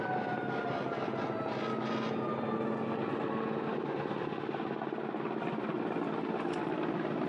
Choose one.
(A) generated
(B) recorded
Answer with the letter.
B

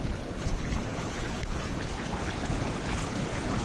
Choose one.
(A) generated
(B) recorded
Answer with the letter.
A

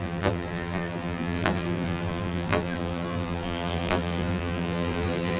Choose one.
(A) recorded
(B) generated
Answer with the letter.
B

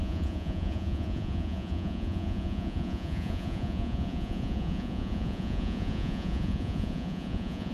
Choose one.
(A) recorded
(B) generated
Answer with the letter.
B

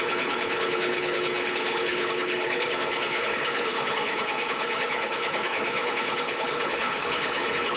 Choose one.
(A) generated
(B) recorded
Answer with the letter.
A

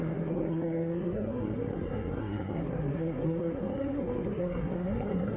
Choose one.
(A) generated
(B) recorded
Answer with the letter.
A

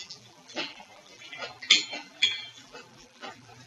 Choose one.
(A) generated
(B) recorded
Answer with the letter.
A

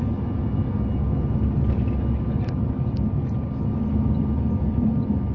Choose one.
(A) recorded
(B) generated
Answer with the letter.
A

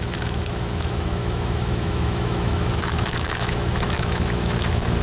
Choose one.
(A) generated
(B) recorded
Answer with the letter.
A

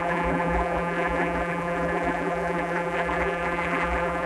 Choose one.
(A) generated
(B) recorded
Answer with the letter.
A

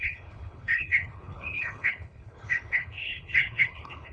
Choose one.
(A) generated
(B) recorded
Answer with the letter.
A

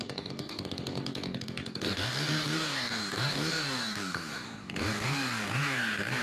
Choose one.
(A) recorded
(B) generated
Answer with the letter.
B